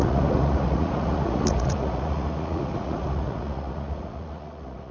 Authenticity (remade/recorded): remade